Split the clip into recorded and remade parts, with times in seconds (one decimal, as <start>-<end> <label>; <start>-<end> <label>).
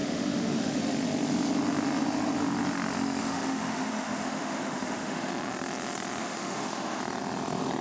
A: 0.0-0.8 remade; 0.8-3.2 recorded; 3.2-5.3 remade; 5.3-6.2 recorded; 6.2-7.0 remade; 7.0-7.8 recorded